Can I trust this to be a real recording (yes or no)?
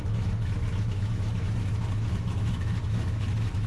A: no